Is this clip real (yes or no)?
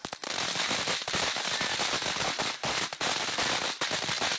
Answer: yes